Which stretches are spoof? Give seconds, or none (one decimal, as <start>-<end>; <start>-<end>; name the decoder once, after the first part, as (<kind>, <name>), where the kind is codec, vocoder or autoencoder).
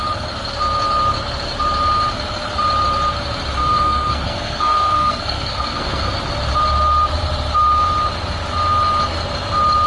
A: 3.6-6.1 (codec, SNAC)